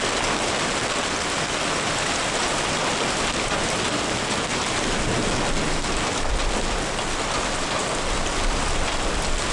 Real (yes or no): yes